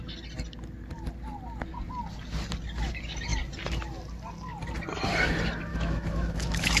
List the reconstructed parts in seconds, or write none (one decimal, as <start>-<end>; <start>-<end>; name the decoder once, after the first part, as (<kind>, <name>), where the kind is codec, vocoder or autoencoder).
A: 5.7-6.8 (autoencoder, DAC-VAE)

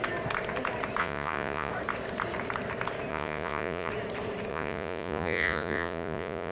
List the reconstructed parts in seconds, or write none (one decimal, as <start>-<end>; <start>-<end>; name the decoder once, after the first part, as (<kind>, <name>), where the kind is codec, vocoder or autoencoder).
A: 1.0-1.7 (vocoder, Vocos); 3.1-3.9; 4.5-6.5